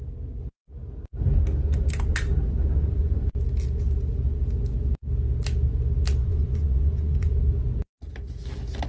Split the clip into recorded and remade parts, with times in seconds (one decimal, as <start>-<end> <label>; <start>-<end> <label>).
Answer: 0.0-2.8 recorded; 2.8-3.3 remade; 3.3-6.2 recorded; 6.2-7.3 remade; 7.3-8.9 recorded